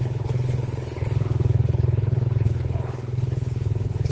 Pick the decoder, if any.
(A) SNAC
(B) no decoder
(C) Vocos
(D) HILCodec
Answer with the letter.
D